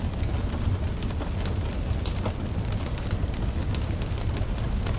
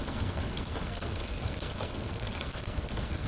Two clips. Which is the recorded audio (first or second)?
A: first